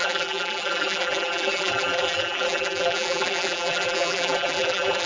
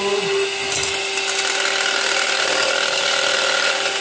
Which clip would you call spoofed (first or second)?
first